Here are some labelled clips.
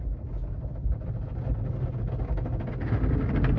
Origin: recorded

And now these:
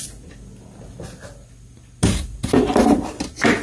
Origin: recorded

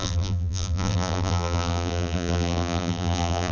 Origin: remade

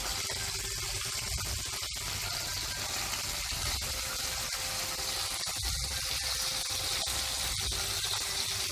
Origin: recorded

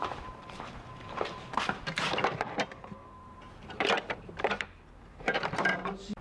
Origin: remade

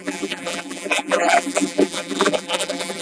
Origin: remade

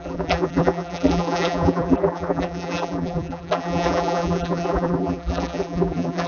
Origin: remade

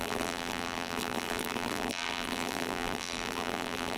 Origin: remade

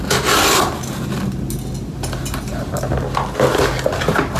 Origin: recorded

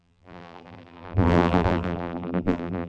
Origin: remade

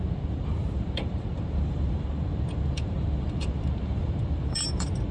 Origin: remade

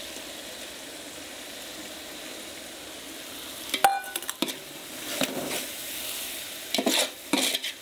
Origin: recorded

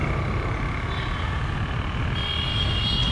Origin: recorded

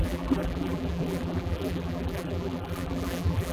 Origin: remade